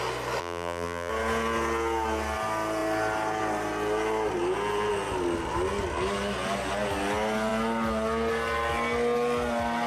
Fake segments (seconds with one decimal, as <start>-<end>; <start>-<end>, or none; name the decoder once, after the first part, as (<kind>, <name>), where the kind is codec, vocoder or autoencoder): 0.4-1.1 (vocoder, BigVGAN v2)